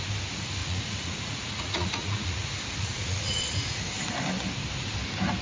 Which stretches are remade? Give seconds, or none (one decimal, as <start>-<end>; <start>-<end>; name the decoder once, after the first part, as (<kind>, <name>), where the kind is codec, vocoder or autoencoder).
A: 0.6-3.8 (vocoder, Vocos)